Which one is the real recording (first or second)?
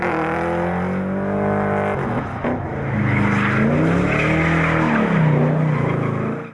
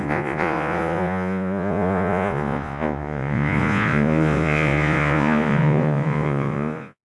first